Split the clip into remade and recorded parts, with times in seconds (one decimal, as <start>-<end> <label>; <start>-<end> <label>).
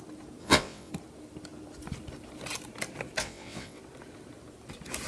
0.0-0.4 recorded; 0.4-0.9 remade; 0.9-3.2 recorded; 3.2-3.8 remade; 3.8-5.1 recorded